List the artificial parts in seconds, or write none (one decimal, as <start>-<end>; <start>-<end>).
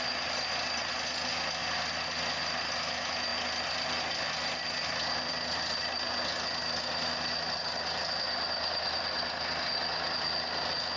none